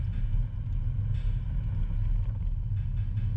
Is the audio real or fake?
real